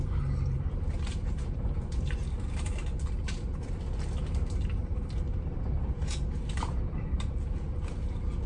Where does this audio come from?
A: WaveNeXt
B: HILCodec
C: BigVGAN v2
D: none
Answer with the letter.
C